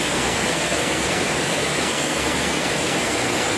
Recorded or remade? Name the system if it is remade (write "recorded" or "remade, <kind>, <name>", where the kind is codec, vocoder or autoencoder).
remade, codec, SNAC